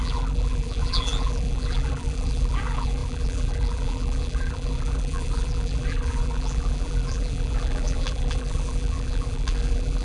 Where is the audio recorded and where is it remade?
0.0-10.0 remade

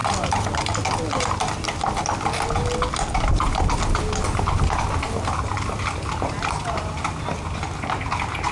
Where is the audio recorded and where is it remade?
0.0-5.5 recorded; 5.5-7.1 remade; 7.1-8.5 recorded

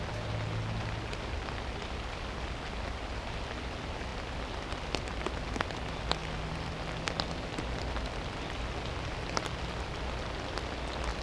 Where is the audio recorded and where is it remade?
0.0-11.2 recorded

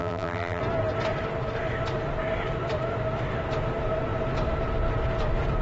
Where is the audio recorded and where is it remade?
0.0-0.6 remade; 0.6-5.6 recorded

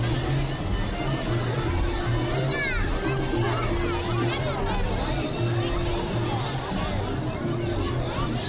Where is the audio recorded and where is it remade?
0.0-8.5 recorded

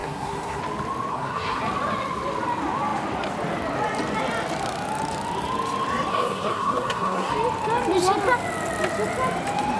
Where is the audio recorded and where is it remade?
0.0-0.6 remade; 0.6-1.1 recorded; 1.1-1.6 remade; 1.6-6.1 recorded; 6.1-7.3 remade; 7.3-9.8 recorded

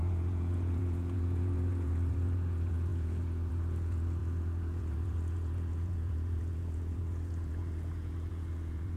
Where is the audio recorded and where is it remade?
0.0-9.0 remade